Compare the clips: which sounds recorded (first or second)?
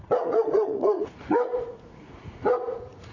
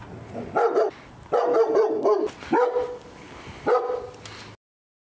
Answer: second